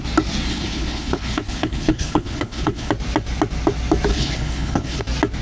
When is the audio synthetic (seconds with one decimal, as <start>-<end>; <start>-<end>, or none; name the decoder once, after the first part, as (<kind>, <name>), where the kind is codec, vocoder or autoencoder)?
0.5-2.9 (codec, HILCodec); 4.1-5.0